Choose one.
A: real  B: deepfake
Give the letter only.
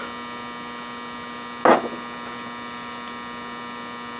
A